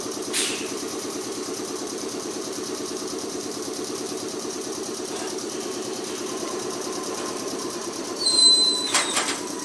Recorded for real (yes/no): no